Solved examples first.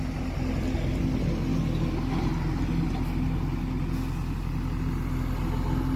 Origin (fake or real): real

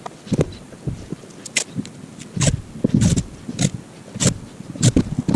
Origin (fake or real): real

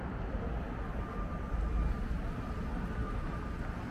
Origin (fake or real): real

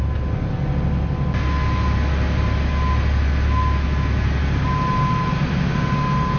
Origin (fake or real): real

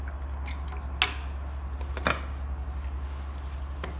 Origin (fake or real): real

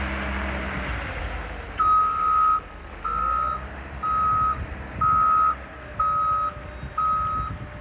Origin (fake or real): real